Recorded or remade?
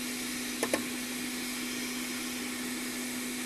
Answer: recorded